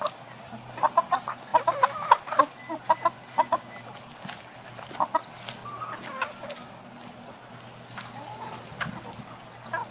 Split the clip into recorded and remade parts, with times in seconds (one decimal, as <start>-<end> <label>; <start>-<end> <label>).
0.0-9.9 recorded